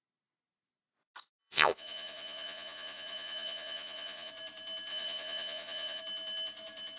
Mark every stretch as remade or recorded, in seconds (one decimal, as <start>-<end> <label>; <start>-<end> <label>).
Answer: 0.0-1.4 recorded; 1.4-4.3 remade; 4.3-4.9 recorded; 4.9-6.0 remade; 6.0-7.0 recorded